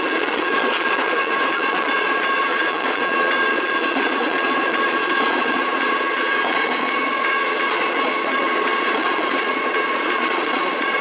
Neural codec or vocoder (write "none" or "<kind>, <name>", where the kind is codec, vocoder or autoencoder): vocoder, Vocos